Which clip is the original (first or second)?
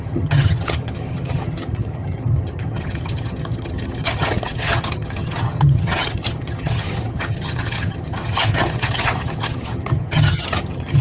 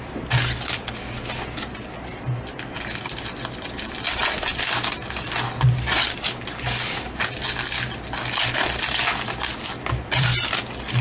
second